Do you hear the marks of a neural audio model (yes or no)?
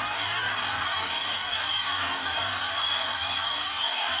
yes